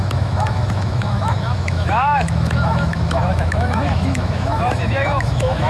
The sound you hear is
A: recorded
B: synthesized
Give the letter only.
B